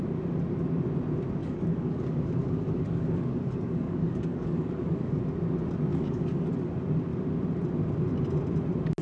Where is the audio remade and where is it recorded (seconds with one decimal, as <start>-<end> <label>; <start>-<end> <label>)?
0.0-1.4 recorded; 1.4-5.2 remade; 5.2-5.9 recorded; 5.9-6.5 remade; 6.5-9.0 recorded

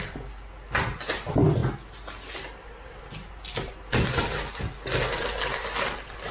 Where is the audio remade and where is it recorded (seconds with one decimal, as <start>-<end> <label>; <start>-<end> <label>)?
0.0-6.3 recorded

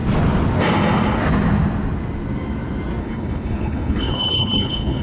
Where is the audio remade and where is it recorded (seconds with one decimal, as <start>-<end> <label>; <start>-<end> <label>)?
0.0-3.0 recorded; 3.0-5.0 remade

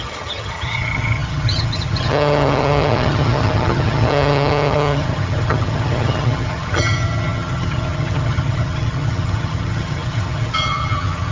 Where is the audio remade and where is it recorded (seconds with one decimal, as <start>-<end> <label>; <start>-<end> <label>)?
0.0-11.3 remade

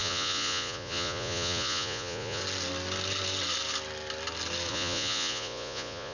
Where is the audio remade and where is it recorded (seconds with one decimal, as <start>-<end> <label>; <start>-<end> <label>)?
0.0-2.4 remade; 2.4-4.7 recorded; 4.7-6.1 remade

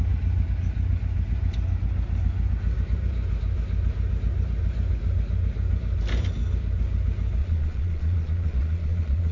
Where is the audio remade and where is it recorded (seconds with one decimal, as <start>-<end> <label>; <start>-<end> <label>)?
0.0-7.4 recorded; 7.4-9.3 remade

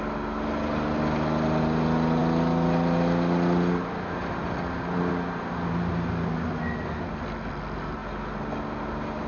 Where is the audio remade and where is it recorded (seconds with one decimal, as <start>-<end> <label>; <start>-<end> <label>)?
0.0-9.3 recorded

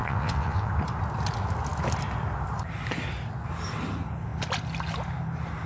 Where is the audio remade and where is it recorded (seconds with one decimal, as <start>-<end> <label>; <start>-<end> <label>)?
0.0-0.7 remade; 0.7-5.7 recorded